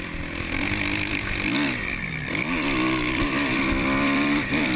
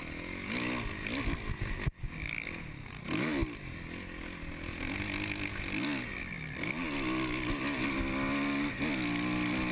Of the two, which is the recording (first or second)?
second